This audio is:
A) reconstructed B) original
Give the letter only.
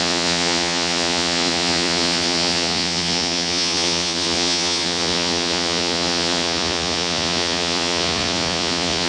A